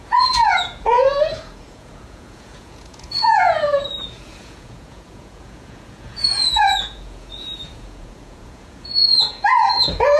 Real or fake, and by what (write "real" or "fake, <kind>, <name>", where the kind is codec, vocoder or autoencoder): fake, vocoder, Vocos